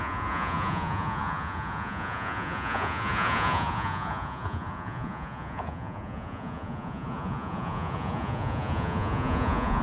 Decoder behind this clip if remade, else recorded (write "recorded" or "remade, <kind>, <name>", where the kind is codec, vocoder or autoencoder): remade, vocoder, Vocos